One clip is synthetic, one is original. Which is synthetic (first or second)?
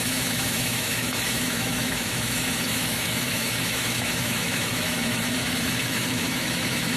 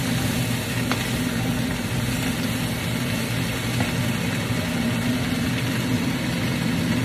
first